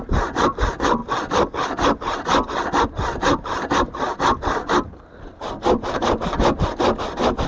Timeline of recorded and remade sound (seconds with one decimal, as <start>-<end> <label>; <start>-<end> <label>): 0.0-7.5 recorded